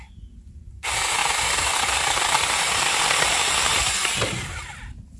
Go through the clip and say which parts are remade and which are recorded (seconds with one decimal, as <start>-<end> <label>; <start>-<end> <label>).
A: 0.0-0.7 recorded; 0.7-5.2 remade

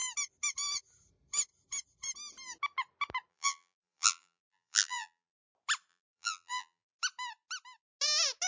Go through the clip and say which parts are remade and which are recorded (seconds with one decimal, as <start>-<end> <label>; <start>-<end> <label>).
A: 0.0-3.3 recorded; 3.3-5.5 remade; 5.5-5.9 recorded; 5.9-6.9 remade; 6.9-8.5 recorded

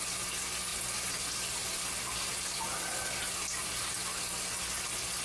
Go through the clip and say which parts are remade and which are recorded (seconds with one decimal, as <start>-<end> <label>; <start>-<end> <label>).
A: 0.0-0.7 recorded; 0.7-3.3 remade; 3.3-5.2 recorded

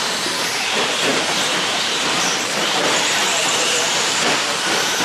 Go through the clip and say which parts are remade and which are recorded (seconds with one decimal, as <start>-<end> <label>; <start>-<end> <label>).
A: 0.0-5.0 remade